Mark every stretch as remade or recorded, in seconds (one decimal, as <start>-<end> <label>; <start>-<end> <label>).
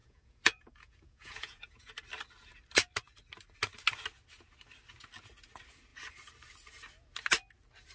0.0-1.9 remade; 1.9-7.9 recorded